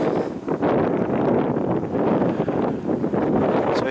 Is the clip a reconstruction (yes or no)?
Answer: no